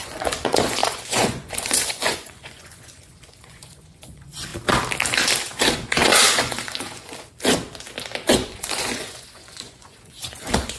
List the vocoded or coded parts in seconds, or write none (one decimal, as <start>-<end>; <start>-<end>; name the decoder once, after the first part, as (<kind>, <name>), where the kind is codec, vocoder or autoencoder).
0.0-4.5 (vocoder, Vocos); 5.7-7.1; 8.3-10.8